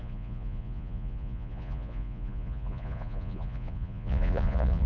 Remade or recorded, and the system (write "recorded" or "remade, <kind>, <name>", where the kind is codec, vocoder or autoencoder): remade, vocoder, Vocos